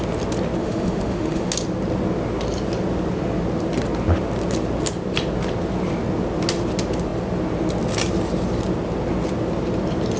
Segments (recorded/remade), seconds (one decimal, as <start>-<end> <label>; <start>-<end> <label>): 0.0-0.6 recorded; 0.6-1.5 remade; 1.5-10.2 recorded